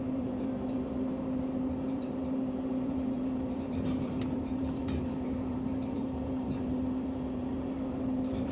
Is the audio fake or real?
fake